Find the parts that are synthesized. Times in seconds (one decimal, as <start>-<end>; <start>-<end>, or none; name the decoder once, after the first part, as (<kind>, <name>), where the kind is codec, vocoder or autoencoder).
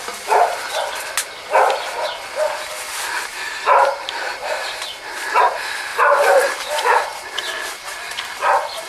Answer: 5.9-7.0 (vocoder, BigVGAN v2)